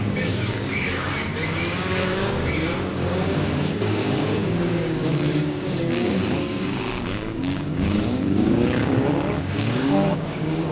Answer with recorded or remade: remade